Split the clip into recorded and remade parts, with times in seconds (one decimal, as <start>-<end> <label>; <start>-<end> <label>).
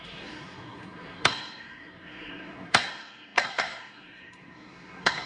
0.0-5.3 remade